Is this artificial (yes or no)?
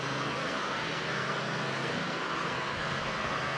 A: yes